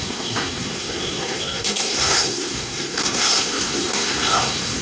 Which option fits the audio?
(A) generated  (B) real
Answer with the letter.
A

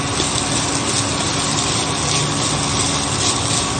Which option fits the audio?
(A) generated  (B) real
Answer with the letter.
B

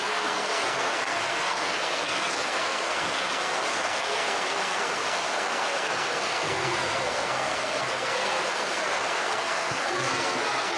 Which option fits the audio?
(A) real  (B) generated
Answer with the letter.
B